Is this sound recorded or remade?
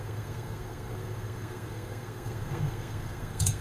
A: remade